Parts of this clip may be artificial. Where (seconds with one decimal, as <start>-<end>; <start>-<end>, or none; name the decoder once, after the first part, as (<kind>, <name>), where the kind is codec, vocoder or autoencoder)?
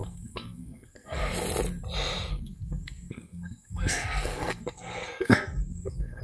0.0-1.2 (codec, SNAC); 2.3-6.2